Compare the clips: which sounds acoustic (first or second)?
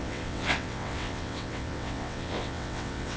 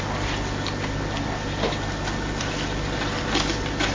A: second